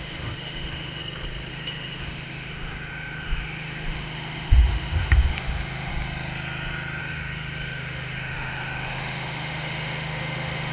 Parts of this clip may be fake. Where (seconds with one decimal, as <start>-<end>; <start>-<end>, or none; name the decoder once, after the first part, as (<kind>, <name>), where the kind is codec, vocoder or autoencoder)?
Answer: 0.0-1.0 (autoencoder, DAC-VAE); 1.5-5.9; 7.0-10.7